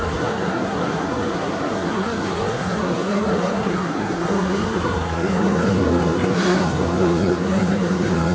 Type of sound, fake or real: fake